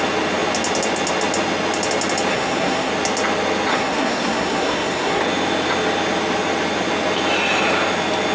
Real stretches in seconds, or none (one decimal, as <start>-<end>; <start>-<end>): 0.0-2.3; 2.9-3.7; 5.2-8.3